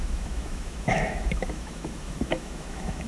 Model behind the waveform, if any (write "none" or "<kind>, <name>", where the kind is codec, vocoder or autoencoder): autoencoder, DAC-VAE